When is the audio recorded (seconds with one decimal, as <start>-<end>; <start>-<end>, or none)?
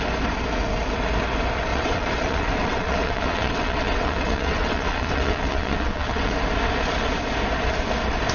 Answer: 0.0-1.7; 6.3-8.3